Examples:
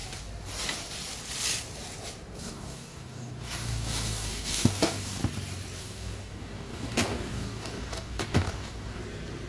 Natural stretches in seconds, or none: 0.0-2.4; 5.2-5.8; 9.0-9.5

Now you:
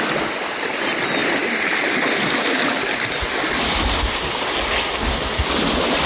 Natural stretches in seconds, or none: 0.0-6.1

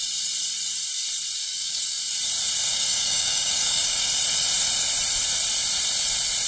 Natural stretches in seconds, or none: 0.0-1.4; 2.0-2.7; 4.1-6.5